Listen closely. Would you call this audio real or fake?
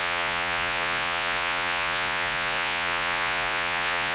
fake